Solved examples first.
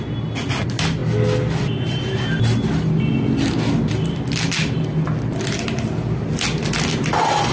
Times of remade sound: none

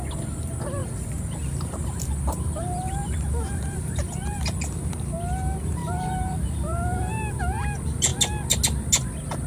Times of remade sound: 0.8-4.9 (vocoder, BigVGAN v2); 5.8-7.4

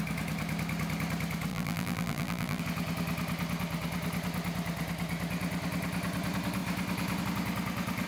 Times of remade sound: 1.5-2.6 (vocoder, BigVGAN v2)

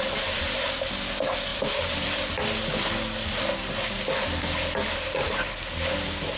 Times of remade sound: 0.0-0.8 (vocoder, BigVGAN v2); 1.5-2.4